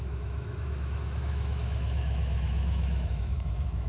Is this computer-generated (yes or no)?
yes